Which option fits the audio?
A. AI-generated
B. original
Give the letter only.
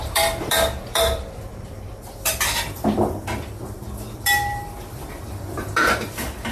A